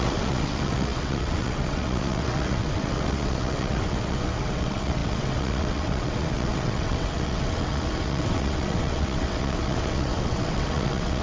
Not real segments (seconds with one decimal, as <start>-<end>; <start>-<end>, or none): 0.0-11.2